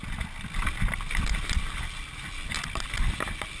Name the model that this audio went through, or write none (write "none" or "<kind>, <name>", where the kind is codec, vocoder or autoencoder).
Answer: none